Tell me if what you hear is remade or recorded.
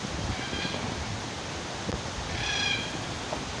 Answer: recorded